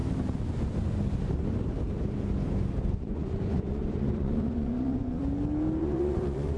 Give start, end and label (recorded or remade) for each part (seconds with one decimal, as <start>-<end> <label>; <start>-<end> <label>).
0.0-2.8 recorded; 2.8-5.2 remade; 5.2-5.8 recorded; 5.8-6.6 remade